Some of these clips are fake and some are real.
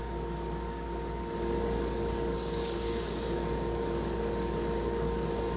fake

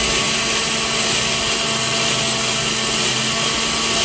real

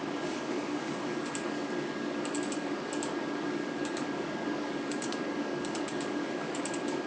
fake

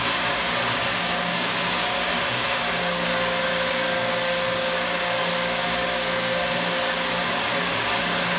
fake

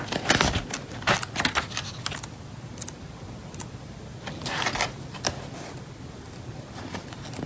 real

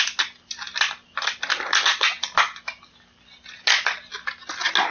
real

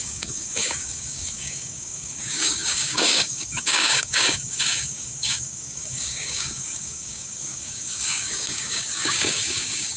fake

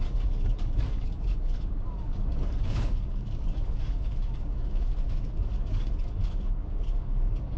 fake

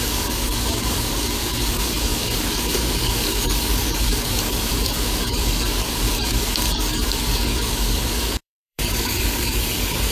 fake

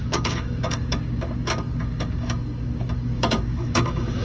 fake